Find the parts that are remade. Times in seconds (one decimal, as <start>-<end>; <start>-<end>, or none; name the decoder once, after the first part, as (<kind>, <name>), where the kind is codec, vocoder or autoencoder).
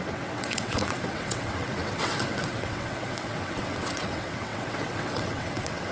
0.0-5.9 (vocoder, WaveNeXt)